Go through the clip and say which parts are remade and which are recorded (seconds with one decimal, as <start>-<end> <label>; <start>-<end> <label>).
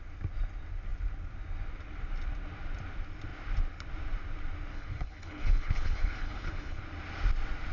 0.0-4.7 recorded; 4.7-6.8 remade; 6.8-7.7 recorded